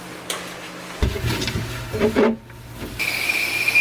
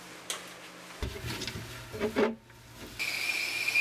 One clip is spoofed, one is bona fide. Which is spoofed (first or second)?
first